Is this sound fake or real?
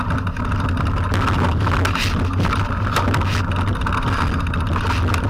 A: real